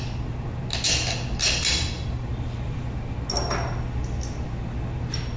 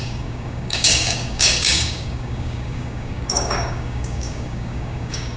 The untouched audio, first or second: first